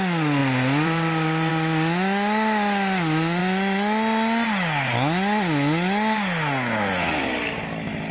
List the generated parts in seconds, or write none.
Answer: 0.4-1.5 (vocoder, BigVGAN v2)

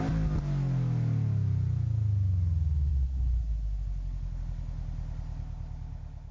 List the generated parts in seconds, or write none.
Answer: none

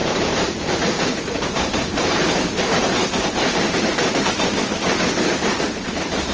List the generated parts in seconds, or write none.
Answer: 0.0-6.3 (vocoder, BigVGAN v2)

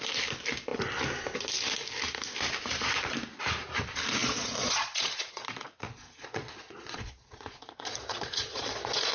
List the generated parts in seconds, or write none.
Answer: 4.2-9.1 (vocoder, Vocos)

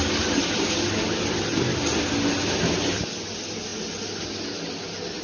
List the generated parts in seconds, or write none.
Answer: none

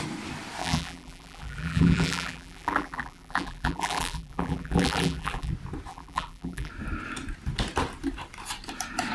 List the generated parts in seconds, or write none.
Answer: 0.6-5.5 (vocoder, BigVGAN v2); 5.9-6.7

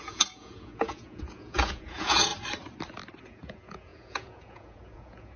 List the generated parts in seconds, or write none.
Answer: 0.0-2.3 (vocoder, Vocos); 3.2-5.4